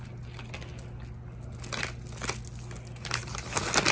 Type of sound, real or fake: real